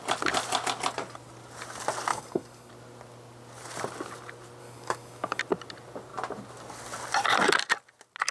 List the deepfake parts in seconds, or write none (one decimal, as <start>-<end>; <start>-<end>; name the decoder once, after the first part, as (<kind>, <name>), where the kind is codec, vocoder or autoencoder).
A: 2.1-2.7 (codec, DAC); 4.6-5.4